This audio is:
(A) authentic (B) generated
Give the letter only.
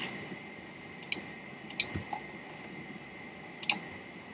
A